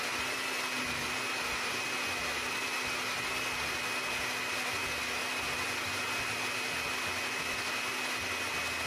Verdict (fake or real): real